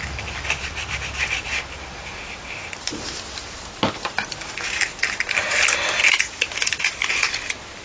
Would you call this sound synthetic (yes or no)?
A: no